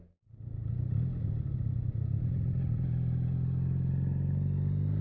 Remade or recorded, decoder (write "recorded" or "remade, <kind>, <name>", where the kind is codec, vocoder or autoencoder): recorded